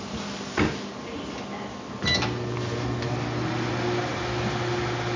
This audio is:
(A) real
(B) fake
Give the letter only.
A